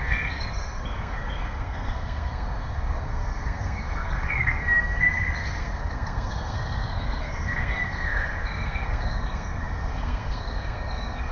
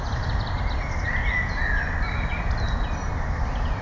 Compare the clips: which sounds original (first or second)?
second